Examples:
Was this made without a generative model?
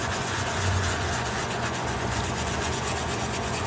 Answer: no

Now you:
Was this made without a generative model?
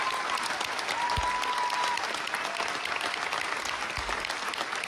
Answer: yes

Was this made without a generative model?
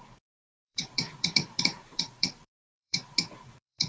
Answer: no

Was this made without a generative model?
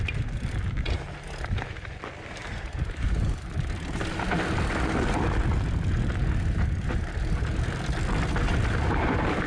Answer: yes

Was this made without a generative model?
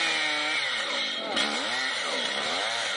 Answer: yes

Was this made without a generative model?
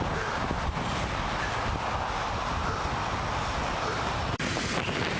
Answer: yes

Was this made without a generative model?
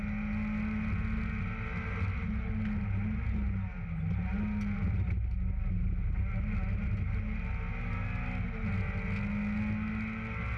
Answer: yes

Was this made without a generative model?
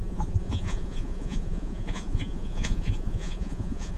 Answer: no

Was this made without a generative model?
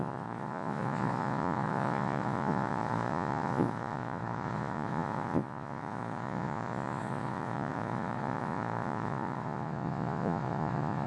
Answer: no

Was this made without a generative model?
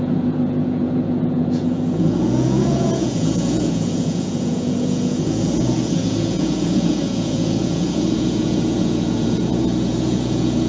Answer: no